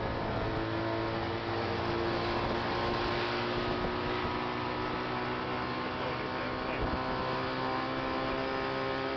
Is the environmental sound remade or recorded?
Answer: recorded